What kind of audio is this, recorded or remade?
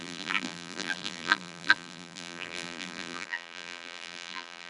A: remade